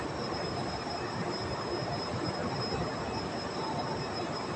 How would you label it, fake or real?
real